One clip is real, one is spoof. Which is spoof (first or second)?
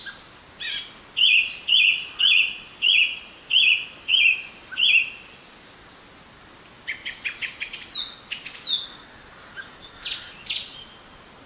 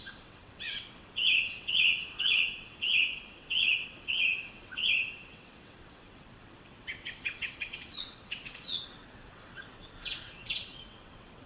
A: second